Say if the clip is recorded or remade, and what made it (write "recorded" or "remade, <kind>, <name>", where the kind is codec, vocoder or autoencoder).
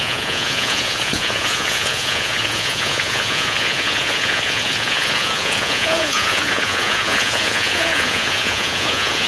remade, vocoder, Vocos